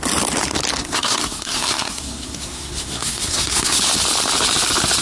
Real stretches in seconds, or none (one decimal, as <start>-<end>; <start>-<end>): 0.0-0.8; 3.8-5.0

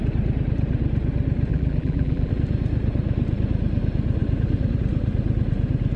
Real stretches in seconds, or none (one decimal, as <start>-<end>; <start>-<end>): 0.0-1.5; 2.3-6.0

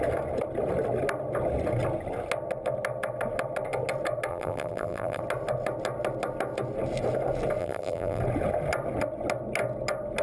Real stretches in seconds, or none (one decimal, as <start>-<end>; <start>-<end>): 0.0-4.3; 5.2-7.6; 8.2-10.2

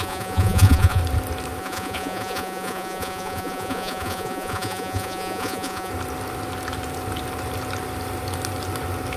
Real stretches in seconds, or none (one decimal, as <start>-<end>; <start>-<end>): 1.0-1.6; 5.9-9.2